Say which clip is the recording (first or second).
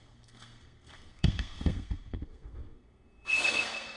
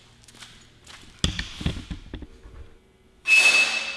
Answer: second